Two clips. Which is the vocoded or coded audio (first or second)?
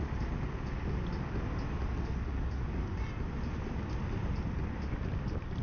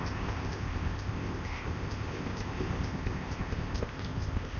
second